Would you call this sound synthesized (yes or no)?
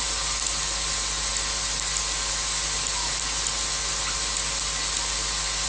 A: no